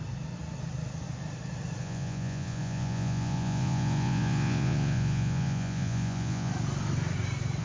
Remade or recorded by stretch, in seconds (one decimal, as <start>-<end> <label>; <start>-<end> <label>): 0.0-1.8 recorded; 1.8-6.5 remade; 6.5-7.6 recorded